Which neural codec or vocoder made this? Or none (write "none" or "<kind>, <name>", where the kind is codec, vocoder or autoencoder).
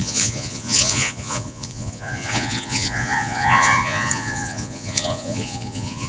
vocoder, Vocos